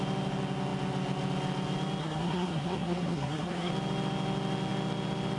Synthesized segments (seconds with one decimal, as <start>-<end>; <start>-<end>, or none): 2.0-3.7